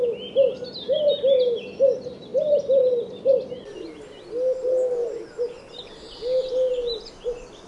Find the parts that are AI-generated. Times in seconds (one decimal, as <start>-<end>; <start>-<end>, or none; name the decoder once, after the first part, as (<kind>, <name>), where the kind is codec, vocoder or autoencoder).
2.3-3.9 (vocoder, BigVGAN v2)